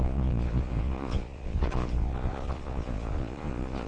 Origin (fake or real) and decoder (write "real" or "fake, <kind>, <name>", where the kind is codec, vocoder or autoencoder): fake, vocoder, Vocos